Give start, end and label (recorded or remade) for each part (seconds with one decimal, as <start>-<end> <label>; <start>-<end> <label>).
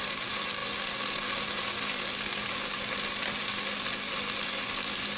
0.0-5.2 recorded